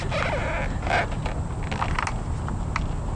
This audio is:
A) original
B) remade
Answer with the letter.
A